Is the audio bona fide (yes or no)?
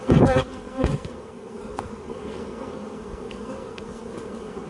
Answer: no